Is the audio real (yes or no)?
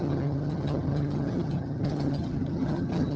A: no